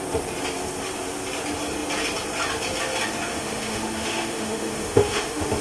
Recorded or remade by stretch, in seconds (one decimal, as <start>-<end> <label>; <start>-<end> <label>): 0.0-3.3 recorded; 3.3-5.6 remade